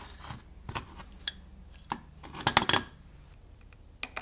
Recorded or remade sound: recorded